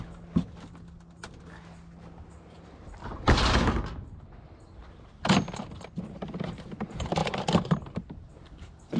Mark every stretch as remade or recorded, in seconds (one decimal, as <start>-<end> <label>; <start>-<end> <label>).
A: 0.0-4.8 recorded; 4.8-5.6 remade; 5.6-7.2 recorded; 7.2-7.8 remade; 7.8-9.0 recorded